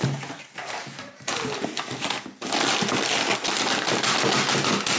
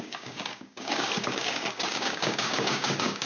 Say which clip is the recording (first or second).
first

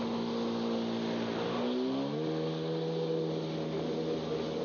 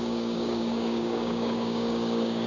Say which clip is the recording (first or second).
first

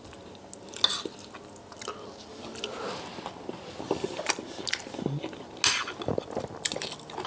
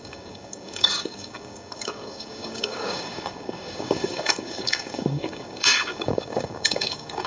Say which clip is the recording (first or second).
first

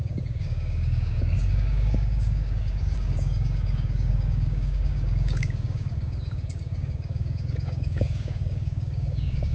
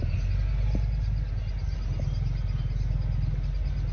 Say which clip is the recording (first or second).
second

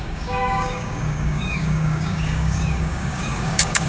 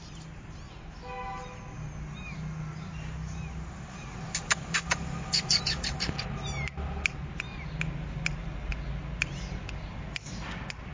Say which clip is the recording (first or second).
second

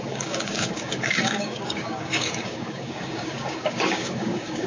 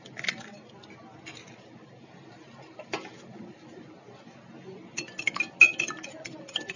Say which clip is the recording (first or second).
second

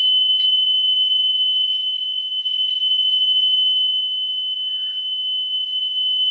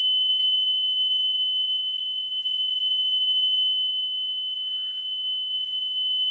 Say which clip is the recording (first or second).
first